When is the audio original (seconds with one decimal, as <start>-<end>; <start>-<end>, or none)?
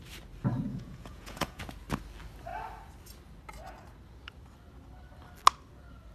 0.0-0.7; 1.6-6.1